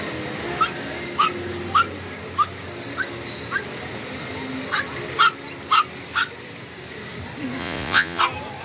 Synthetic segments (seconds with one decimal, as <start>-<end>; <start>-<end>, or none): 7.6-8.2